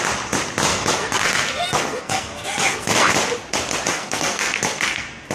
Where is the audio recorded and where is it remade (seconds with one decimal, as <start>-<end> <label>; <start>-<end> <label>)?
0.0-0.7 recorded; 0.7-3.1 remade; 3.1-3.9 recorded; 3.9-5.3 remade